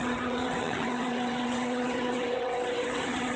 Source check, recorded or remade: remade